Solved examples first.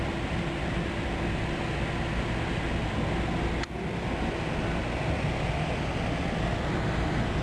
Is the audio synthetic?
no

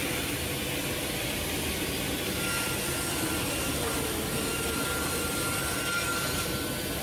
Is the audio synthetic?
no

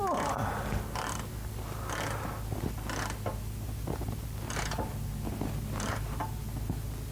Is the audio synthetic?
no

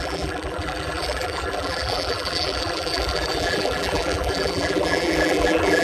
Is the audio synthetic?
yes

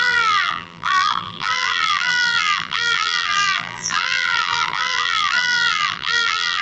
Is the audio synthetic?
yes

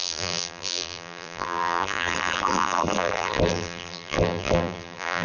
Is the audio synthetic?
yes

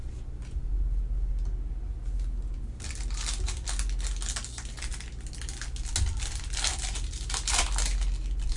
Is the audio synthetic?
no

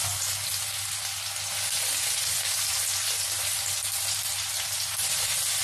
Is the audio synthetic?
no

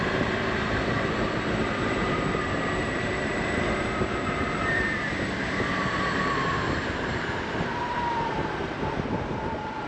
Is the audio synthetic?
yes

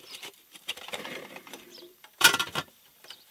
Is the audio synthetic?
yes